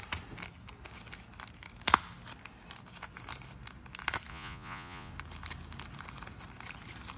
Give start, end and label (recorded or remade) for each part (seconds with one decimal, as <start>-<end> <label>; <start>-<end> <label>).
0.0-4.3 recorded; 4.3-5.1 remade; 5.1-7.2 recorded